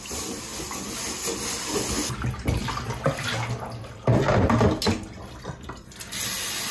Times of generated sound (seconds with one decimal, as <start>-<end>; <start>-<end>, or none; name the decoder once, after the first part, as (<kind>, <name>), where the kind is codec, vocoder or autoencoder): none